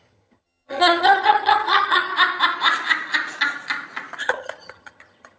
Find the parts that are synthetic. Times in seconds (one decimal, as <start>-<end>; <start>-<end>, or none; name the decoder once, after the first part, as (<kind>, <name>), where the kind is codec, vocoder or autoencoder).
0.0-2.1 (vocoder, HiFi-GAN); 4.2-5.4